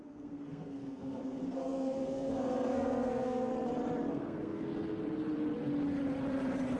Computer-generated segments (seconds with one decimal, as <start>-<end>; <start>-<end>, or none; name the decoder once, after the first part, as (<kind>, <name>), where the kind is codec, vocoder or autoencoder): 0.0-3.5 (codec, SNAC); 4.1-4.7